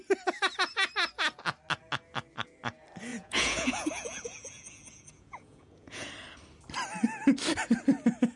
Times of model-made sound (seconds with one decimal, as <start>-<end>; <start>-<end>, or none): 3.1-6.1